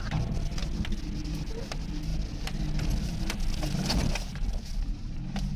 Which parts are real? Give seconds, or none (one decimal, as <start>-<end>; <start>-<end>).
0.0-5.6